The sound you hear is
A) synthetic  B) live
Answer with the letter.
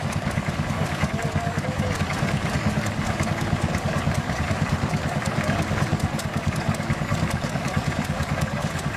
A